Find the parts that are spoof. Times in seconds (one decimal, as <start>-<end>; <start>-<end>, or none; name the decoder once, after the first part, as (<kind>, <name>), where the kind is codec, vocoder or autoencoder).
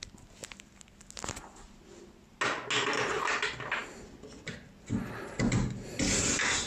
none